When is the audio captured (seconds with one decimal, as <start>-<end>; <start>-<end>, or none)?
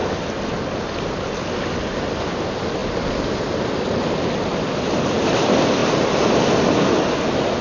0.0-7.6